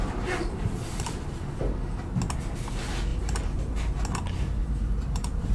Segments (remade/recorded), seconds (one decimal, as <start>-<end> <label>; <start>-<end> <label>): 0.0-1.6 remade; 1.6-3.1 recorded; 3.1-3.7 remade; 3.7-4.6 recorded; 4.6-5.5 remade